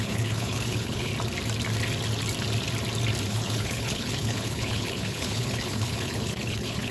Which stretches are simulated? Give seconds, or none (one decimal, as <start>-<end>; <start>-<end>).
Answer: 0.0-1.1; 3.3-6.9